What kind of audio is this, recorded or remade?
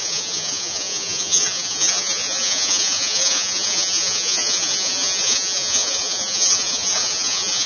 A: remade